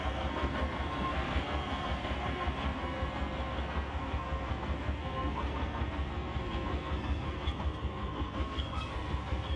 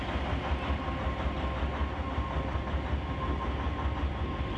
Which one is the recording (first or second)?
second